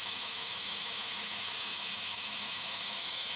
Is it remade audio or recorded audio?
remade